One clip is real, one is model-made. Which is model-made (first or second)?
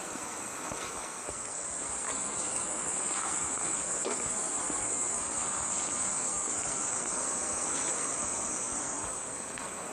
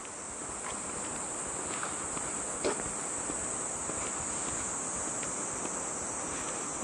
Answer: first